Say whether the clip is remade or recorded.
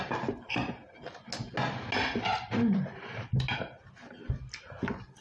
recorded